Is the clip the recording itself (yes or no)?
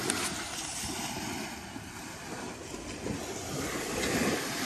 yes